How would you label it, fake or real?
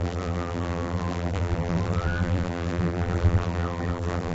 fake